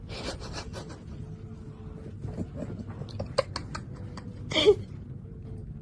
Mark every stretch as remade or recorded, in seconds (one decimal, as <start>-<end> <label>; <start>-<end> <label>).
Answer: 0.0-0.7 recorded; 0.7-1.2 remade; 1.2-3.6 recorded; 3.6-4.9 remade; 4.9-5.8 recorded